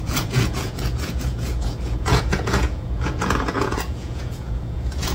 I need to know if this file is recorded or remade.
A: remade